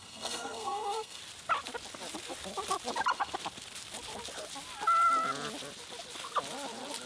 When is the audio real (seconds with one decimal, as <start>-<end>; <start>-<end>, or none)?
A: 1.2-7.1